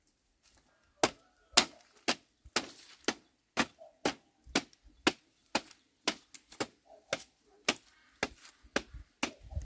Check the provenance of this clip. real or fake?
real